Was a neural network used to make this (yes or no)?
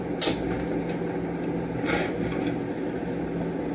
no